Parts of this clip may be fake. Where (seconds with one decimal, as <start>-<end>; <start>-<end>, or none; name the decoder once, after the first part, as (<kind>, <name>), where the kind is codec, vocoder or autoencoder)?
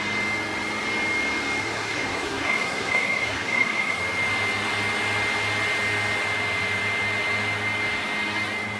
1.6-4.0 (codec, SNAC)